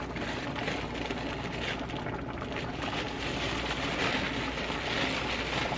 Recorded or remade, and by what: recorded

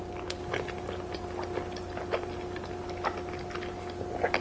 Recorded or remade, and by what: recorded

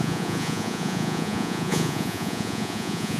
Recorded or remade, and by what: remade, vocoder, Vocos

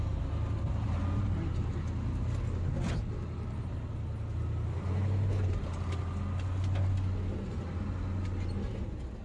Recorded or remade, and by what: recorded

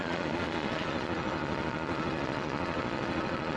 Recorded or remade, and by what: remade, vocoder, Vocos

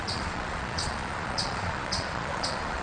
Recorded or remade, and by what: remade, vocoder, Vocos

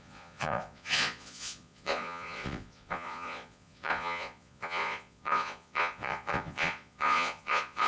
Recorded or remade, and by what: remade, vocoder, Vocos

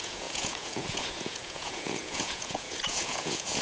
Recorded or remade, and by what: remade, vocoder, Vocos